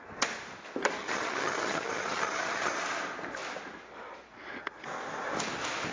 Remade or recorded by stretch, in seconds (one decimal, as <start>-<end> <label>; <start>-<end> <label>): 0.0-1.0 recorded; 1.0-2.7 remade; 2.7-5.9 recorded